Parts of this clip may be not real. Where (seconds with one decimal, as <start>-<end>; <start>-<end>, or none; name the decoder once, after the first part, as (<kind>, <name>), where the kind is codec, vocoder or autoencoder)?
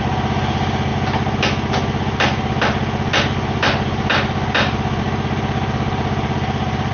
none